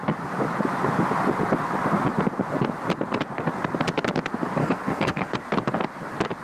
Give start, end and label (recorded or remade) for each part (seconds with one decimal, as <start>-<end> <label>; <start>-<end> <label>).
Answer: 0.0-4.6 recorded; 4.6-5.4 remade; 5.4-6.4 recorded